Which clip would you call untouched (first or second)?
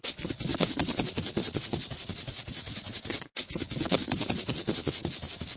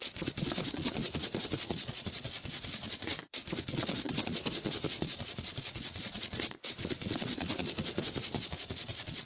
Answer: first